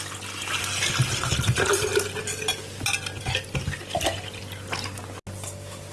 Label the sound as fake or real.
real